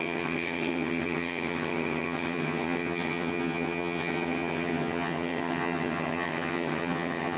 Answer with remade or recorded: remade